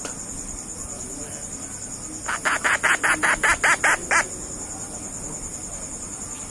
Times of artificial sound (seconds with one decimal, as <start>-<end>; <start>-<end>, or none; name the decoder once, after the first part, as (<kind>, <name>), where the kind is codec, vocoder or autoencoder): none